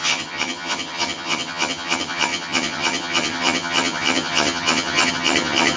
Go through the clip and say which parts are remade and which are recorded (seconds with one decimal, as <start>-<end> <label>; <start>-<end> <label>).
0.0-5.8 remade